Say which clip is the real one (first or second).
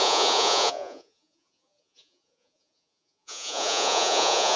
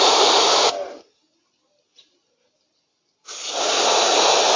second